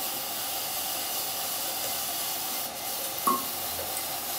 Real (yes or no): yes